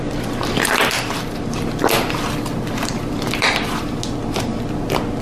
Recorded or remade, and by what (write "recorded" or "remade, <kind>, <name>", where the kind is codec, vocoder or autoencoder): recorded